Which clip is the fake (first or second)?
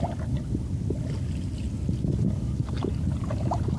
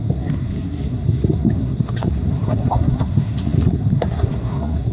second